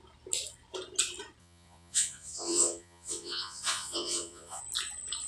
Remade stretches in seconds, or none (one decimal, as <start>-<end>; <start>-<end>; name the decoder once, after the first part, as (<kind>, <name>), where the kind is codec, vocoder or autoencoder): 1.4-4.6 (vocoder, Vocos)